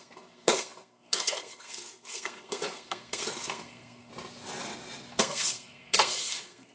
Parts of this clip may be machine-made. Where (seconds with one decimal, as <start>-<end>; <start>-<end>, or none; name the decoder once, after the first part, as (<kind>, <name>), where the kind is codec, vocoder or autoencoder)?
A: 0.0-4.1 (codec, SNAC); 5.2-6.7